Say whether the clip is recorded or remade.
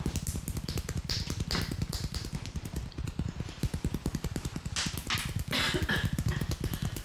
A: recorded